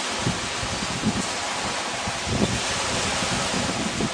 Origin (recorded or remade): recorded